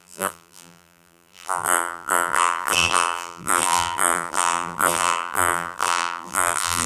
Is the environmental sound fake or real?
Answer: fake